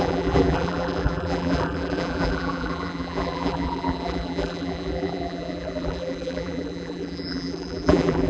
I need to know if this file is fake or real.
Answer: fake